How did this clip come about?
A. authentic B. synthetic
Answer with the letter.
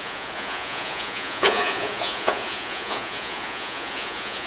B